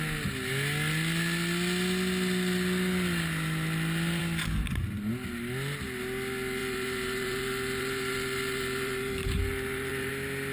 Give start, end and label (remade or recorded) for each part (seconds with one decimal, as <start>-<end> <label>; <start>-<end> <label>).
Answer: 0.0-6.6 recorded; 6.6-10.1 remade; 10.1-10.5 recorded

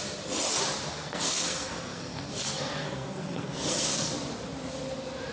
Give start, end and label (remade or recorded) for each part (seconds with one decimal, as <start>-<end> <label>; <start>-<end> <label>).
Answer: 0.0-0.9 recorded; 0.9-4.1 remade; 4.1-5.3 recorded

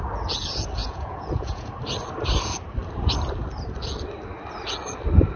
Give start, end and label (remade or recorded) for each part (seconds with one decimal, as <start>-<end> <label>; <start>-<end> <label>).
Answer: 0.0-0.8 recorded; 0.8-1.7 remade; 1.7-5.4 recorded

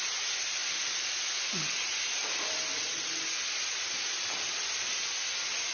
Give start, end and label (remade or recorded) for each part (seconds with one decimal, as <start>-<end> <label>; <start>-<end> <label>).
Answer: 0.0-5.7 recorded